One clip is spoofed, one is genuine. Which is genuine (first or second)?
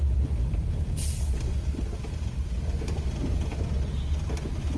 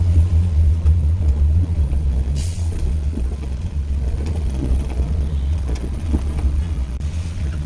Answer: first